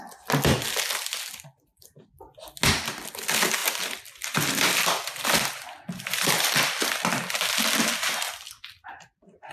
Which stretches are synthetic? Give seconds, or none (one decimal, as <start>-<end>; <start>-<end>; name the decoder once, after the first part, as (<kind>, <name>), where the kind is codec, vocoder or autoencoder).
3.6-7.4 (vocoder, BigVGAN v2)